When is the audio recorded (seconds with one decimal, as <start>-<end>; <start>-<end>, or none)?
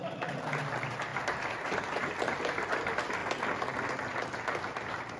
0.0-5.2